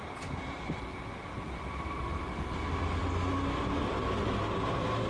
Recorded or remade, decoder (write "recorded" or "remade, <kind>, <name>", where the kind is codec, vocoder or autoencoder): recorded